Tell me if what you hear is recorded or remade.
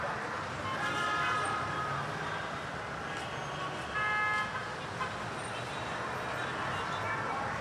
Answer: recorded